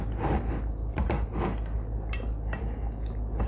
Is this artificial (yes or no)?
no